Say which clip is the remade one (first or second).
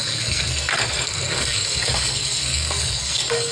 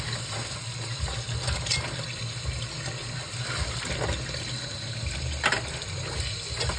first